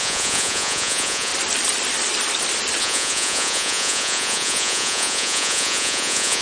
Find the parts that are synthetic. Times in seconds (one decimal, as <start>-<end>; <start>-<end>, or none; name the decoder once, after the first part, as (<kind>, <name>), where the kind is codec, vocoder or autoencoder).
0.0-1.3 (vocoder, Vocos); 2.8-6.4